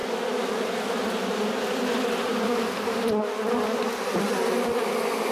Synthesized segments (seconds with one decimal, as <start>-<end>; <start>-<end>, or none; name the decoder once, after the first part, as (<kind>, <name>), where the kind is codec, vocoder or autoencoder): none